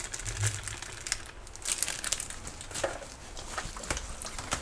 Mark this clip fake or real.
real